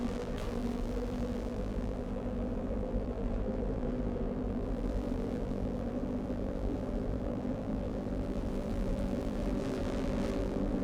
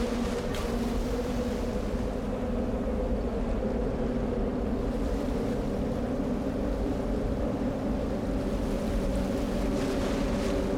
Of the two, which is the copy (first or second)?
first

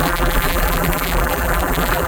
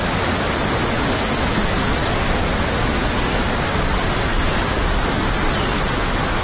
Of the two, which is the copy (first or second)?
first